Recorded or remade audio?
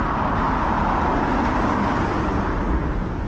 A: recorded